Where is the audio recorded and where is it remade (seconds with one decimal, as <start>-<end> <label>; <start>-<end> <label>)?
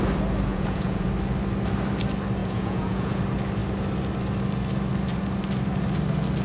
0.0-0.5 recorded; 0.5-1.1 remade; 1.1-2.4 recorded; 2.4-3.2 remade; 3.2-6.4 recorded